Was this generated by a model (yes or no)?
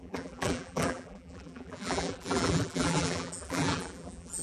yes